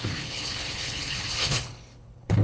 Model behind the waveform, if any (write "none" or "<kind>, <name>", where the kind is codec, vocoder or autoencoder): codec, HILCodec